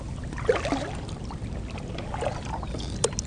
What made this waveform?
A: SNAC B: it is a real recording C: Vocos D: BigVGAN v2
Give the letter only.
B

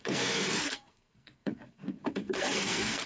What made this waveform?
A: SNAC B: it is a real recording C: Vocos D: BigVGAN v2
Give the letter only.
A